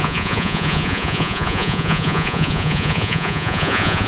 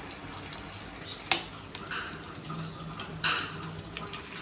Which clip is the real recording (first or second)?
second